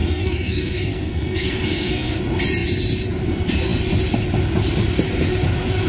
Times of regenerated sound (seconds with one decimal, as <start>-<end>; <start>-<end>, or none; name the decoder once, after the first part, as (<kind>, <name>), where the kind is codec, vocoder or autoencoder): 0.0-2.2 (codec, SNAC)